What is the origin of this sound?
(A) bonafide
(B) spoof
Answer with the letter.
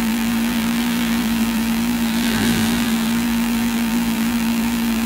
B